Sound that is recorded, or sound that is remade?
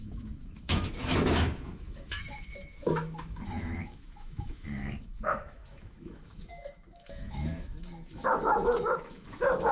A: remade